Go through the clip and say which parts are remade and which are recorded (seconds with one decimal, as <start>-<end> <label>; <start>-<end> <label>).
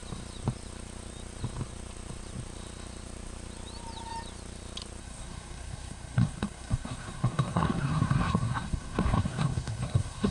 0.0-5.0 recorded; 5.0-10.3 remade